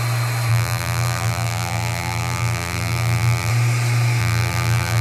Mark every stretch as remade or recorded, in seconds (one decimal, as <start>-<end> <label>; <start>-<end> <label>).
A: 0.0-0.5 recorded; 0.5-3.5 remade; 3.5-4.2 recorded; 4.2-5.0 remade